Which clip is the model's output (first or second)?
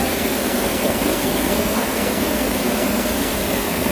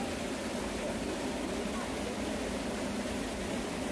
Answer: first